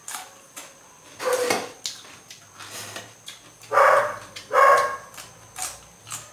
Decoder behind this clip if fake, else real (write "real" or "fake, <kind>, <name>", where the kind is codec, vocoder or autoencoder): real